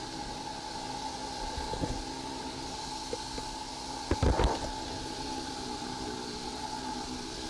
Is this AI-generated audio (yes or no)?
no